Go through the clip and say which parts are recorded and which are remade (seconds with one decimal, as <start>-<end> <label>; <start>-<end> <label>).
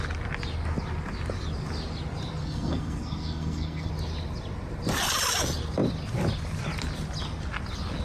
0.0-2.4 recorded; 2.4-3.9 remade; 3.9-8.0 recorded